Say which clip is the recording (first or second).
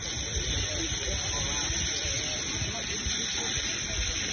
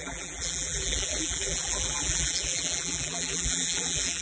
first